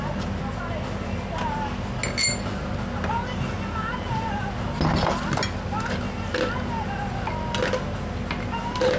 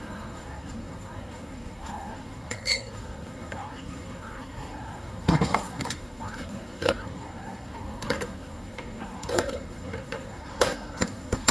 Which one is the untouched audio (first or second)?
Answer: first